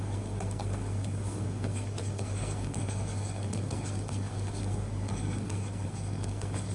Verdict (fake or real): fake